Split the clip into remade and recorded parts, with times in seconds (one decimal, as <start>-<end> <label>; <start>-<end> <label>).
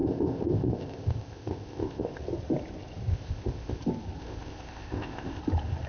0.0-2.2 remade; 2.2-3.1 recorded; 3.1-3.8 remade; 3.8-4.2 recorded; 4.2-5.4 remade; 5.4-5.9 recorded